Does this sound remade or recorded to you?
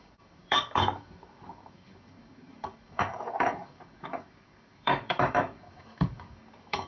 remade